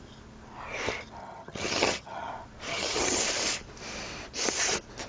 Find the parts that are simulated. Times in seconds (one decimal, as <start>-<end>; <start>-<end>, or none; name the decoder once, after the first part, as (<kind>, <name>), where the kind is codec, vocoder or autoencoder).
1.2-2.3 (vocoder, HiFi-GAN); 2.7-3.2